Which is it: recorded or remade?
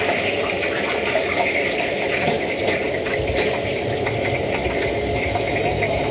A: recorded